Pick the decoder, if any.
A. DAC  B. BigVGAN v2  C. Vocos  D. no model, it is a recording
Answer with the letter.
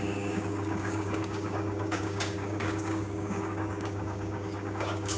A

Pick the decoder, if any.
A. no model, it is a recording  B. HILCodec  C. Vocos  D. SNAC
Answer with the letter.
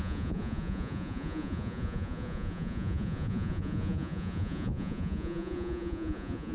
C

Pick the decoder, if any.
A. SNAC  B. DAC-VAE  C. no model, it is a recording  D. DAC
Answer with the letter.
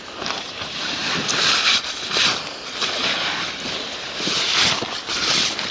C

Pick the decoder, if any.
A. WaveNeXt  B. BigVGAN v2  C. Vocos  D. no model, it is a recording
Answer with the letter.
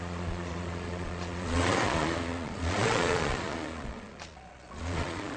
C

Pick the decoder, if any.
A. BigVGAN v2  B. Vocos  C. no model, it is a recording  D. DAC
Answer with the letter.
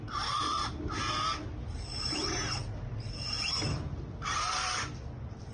C